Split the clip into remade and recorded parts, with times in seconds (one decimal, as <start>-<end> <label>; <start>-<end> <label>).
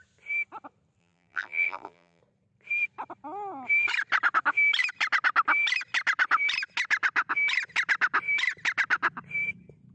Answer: 0.0-1.0 recorded; 1.0-2.2 remade; 2.2-9.9 recorded